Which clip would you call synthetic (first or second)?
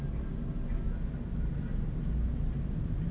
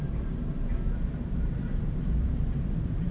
second